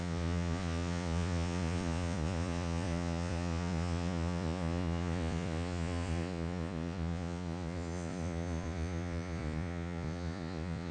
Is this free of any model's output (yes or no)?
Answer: no